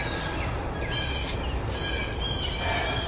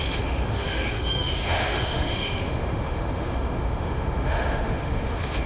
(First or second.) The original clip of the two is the first